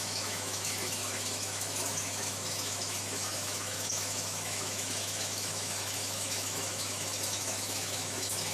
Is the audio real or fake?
fake